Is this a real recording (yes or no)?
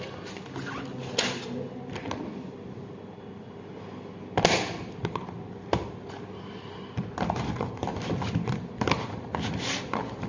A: yes